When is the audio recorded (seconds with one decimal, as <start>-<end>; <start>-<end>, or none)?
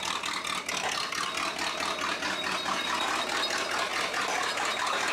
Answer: 0.0-5.1